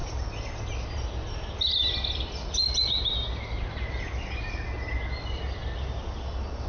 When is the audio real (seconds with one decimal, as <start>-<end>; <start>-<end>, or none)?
0.0-6.7